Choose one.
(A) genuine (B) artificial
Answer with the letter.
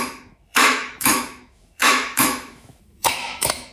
B